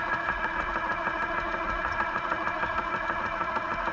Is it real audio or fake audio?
fake